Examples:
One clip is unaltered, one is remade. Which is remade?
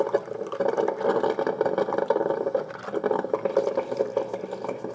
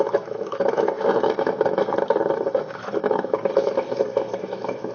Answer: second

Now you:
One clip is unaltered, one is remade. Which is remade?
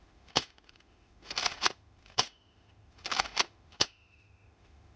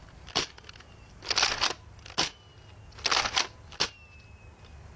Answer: first